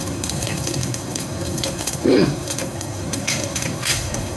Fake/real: fake